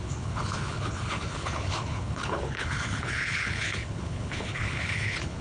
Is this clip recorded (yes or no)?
no